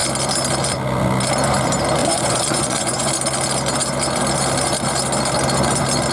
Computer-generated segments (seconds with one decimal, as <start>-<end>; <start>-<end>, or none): 2.0-3.1